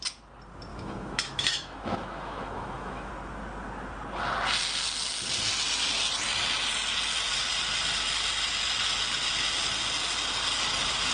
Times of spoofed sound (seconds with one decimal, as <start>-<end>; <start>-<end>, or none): 0.7-3.1